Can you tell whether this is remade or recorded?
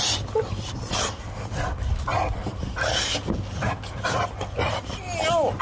recorded